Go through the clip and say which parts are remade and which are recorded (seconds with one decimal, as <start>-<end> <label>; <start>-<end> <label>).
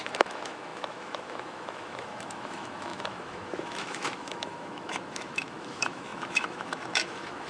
0.0-7.5 remade